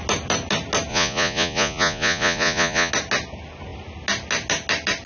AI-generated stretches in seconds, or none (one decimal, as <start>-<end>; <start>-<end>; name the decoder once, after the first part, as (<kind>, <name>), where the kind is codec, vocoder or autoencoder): 0.9-2.9 (vocoder, Vocos)